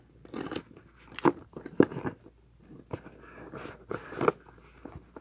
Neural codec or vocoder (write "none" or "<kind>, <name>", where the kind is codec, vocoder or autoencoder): none